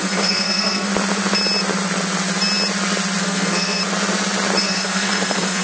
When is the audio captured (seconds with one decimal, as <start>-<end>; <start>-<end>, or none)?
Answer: 0.9-3.2; 3.8-4.6